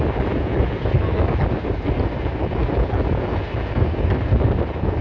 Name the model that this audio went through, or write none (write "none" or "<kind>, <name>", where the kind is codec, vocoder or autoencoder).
none